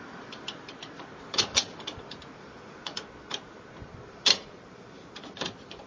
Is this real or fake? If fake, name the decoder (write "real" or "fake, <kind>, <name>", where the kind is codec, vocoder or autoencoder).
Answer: fake, vocoder, BigVGAN v2